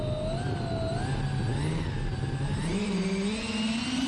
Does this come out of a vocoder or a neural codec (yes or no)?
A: no